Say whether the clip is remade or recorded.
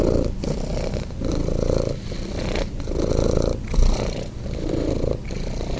recorded